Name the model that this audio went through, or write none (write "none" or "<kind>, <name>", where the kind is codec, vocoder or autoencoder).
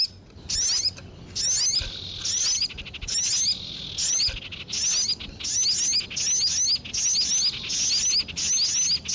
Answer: none